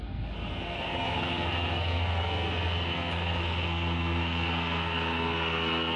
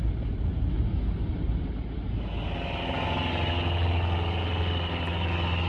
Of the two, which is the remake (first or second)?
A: first